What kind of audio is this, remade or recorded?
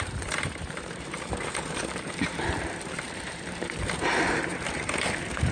remade